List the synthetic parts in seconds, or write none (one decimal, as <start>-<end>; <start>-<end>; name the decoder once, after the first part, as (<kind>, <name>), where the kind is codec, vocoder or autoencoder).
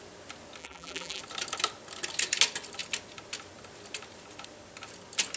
0.6-1.2 (vocoder, BigVGAN v2)